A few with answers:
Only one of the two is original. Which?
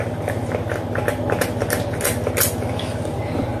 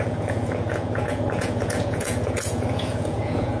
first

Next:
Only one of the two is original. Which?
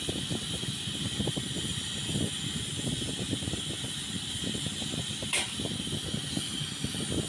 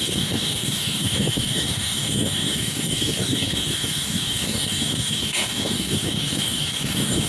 first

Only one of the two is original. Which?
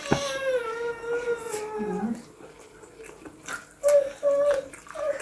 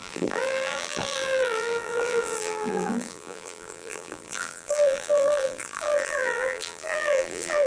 first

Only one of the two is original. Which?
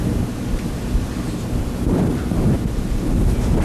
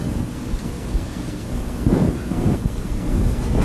first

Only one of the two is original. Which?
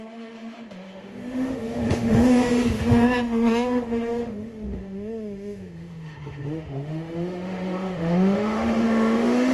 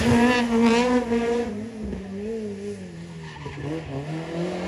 second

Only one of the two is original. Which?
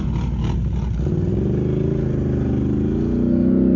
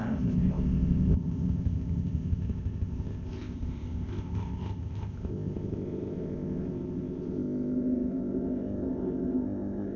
first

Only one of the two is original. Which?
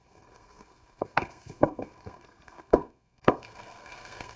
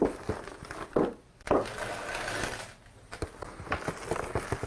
second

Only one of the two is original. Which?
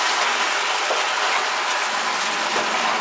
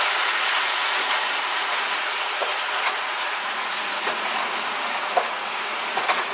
first